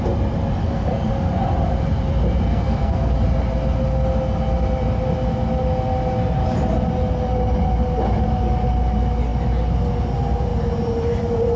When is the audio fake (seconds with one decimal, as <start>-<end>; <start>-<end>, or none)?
0.6-1.1; 2.5-3.1